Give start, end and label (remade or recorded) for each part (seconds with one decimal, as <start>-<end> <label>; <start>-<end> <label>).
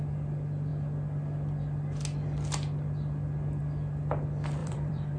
0.0-4.6 recorded; 4.6-5.2 remade